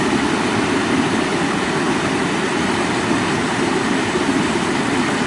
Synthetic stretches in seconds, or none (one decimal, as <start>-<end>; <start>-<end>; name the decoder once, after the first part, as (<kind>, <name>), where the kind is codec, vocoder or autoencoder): 0.0-1.3 (vocoder, BigVGAN v2); 3.6-5.3